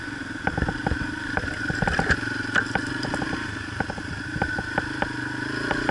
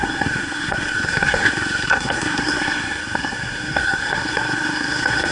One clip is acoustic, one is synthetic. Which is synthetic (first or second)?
second